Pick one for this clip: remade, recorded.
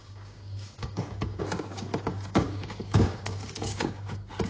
remade